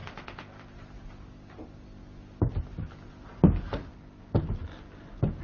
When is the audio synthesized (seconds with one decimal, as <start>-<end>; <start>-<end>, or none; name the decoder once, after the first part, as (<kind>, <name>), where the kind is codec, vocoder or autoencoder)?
none